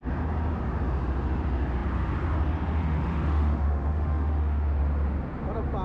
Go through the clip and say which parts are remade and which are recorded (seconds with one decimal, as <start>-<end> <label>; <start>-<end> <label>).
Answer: 0.0-2.8 recorded; 2.8-4.8 remade; 4.8-5.8 recorded